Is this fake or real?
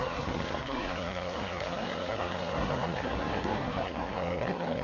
fake